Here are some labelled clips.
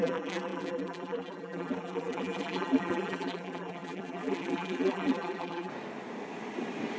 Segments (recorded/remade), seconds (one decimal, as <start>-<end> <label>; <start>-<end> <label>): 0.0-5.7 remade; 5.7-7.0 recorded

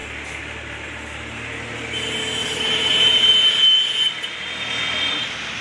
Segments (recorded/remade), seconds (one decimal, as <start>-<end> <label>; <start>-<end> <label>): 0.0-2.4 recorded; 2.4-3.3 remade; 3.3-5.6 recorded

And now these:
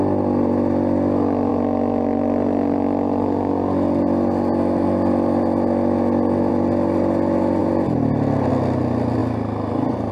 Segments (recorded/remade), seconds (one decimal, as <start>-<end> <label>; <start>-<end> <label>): 0.0-7.6 recorded; 7.6-8.5 remade; 8.5-10.1 recorded

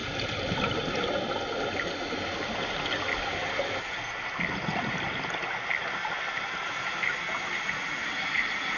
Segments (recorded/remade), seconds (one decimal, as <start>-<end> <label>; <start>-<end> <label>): 0.0-5.8 recorded; 5.8-8.8 remade

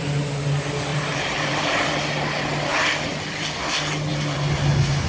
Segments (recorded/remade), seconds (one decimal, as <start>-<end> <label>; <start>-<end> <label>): 0.0-0.9 recorded; 0.9-2.0 remade; 2.0-4.1 recorded; 4.1-4.6 remade; 4.6-5.1 recorded